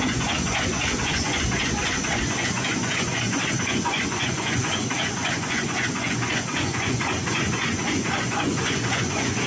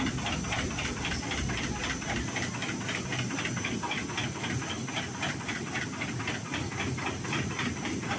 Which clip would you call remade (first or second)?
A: first